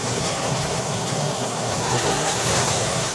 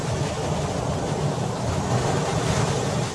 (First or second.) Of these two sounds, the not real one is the first